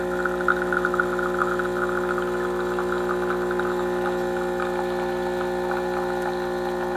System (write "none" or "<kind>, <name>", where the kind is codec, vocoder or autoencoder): none